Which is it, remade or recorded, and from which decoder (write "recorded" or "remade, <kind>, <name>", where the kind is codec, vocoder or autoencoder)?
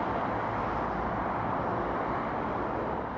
recorded